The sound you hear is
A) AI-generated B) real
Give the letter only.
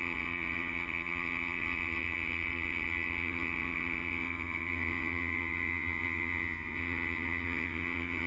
A